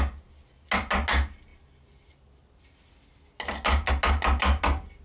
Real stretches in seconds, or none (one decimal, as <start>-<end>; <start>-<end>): 0.0-5.0

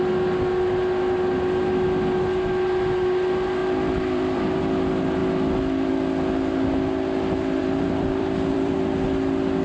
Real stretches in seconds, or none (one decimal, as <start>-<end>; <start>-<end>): 0.0-3.6; 4.6-7.6; 8.7-9.6

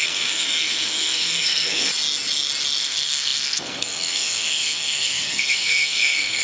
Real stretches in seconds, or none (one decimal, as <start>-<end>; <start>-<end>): 1.9-2.8

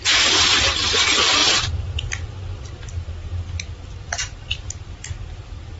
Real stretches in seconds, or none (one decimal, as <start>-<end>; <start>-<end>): 0.0-1.4; 4.9-5.8

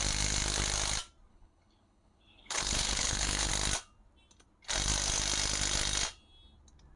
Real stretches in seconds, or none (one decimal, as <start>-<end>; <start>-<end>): 0.0-1.3; 3.5-7.0

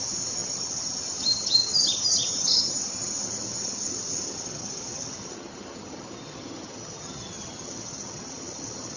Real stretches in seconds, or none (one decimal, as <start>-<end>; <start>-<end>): none

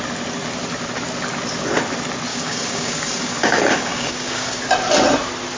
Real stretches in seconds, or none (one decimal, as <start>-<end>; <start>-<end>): 0.0-2.3; 4.6-5.6

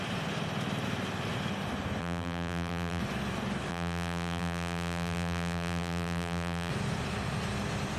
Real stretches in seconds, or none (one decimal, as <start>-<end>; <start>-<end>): 0.0-2.0; 3.0-3.7; 6.7-8.0